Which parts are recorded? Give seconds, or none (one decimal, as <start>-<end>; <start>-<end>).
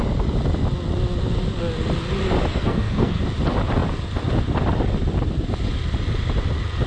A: 0.0-2.5; 3.2-6.9